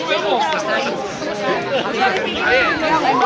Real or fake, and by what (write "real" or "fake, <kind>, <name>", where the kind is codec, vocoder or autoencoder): real